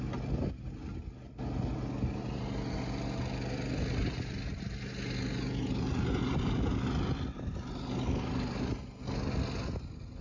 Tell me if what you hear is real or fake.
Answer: real